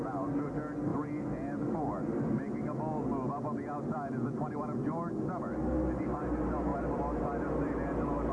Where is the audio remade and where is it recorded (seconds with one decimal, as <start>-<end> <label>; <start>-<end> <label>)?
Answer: 0.0-8.3 recorded